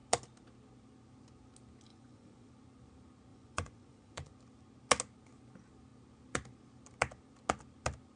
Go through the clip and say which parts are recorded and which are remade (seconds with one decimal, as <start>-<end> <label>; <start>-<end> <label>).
0.0-1.9 recorded; 1.9-2.5 remade; 2.5-3.3 recorded; 3.3-4.3 remade; 4.3-8.2 recorded